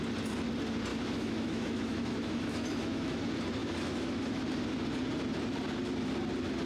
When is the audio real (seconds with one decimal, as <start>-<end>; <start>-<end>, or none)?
0.0-0.9; 3.2-3.6; 4.4-6.7